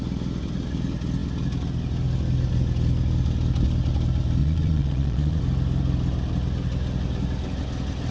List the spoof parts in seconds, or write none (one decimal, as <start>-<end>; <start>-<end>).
4.4-5.4